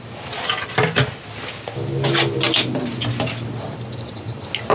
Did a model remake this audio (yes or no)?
no